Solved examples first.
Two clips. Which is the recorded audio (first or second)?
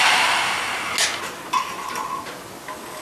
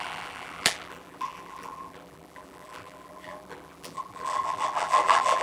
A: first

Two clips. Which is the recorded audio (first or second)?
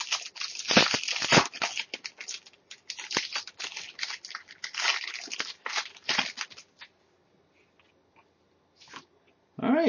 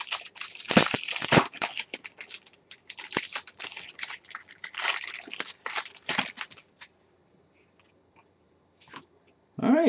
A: first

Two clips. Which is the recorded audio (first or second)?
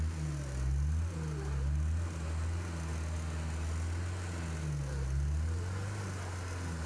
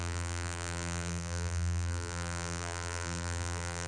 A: first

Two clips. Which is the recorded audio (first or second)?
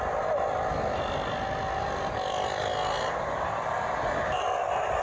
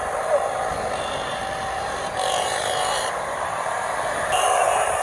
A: first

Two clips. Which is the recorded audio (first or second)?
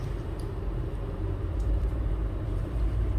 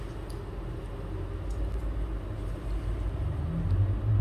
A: second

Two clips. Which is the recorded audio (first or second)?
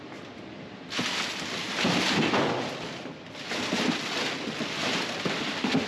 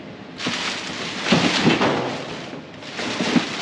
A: second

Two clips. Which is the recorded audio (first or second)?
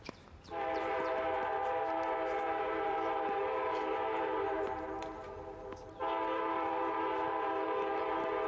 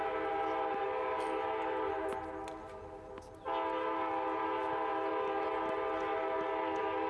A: second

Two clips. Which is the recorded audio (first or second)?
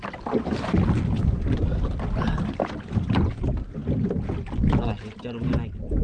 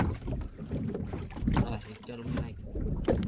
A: first